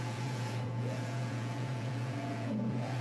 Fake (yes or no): yes